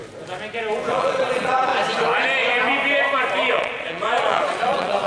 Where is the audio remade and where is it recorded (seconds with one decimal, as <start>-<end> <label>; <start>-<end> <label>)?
0.0-0.9 recorded; 0.9-1.7 remade; 1.7-3.5 recorded; 3.5-5.1 remade